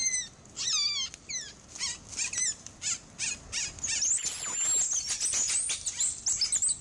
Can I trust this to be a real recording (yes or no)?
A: yes